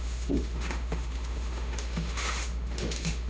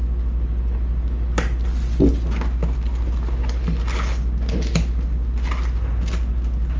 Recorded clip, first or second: second